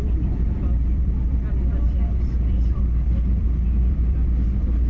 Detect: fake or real fake